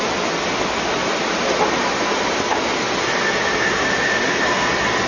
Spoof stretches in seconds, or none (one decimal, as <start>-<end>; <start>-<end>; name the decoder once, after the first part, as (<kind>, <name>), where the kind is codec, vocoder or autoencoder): 1.0-2.4 (vocoder, BigVGAN v2); 3.5-4.5